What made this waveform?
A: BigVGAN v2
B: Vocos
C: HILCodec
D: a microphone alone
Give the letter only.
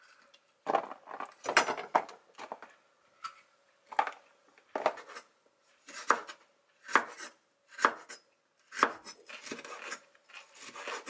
D